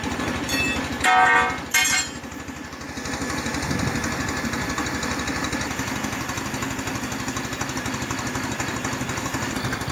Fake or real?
real